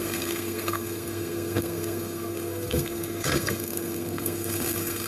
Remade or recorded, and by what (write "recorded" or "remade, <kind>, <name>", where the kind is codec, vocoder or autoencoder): remade, codec, SNAC